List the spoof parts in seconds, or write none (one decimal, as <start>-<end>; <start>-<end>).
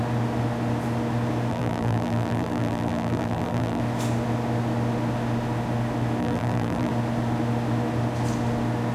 1.5-3.8; 6.2-6.9